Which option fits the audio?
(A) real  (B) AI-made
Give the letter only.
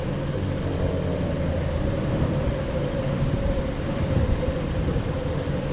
A